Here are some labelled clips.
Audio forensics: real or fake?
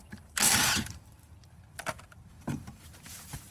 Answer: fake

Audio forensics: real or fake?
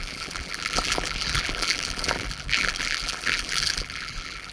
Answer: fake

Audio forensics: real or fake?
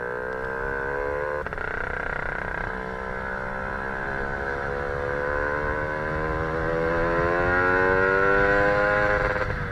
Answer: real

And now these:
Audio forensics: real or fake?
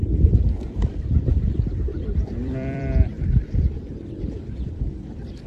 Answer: fake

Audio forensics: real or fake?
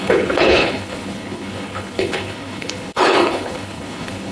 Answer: fake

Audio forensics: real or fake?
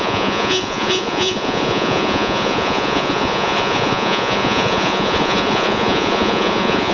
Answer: fake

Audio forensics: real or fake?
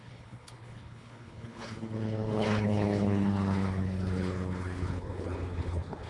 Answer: fake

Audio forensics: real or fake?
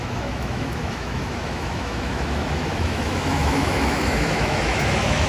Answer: fake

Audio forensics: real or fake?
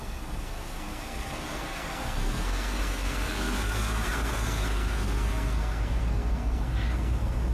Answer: fake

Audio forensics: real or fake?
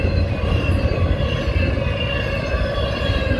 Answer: real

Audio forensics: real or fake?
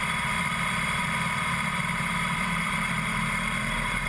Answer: fake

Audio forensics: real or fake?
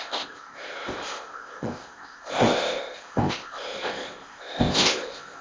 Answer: fake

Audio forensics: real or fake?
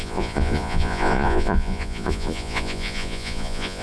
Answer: fake